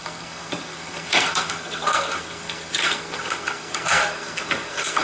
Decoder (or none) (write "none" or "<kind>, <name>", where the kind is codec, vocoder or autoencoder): codec, SNAC